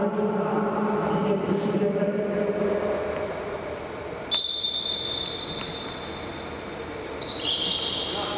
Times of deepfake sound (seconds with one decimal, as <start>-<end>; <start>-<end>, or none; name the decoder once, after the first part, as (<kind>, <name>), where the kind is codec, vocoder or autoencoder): none